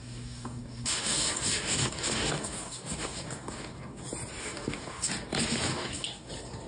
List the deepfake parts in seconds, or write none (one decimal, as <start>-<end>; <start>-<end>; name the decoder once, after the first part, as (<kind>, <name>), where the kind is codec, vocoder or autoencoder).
0.0-4.0 (codec, DAC); 4.4-5.1; 5.7-6.3